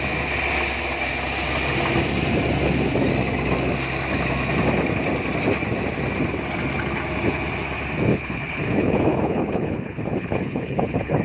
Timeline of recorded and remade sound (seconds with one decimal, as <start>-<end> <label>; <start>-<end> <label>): 0.0-8.1 recorded; 8.1-11.2 remade